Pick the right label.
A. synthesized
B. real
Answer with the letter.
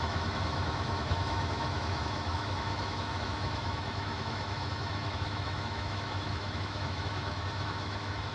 A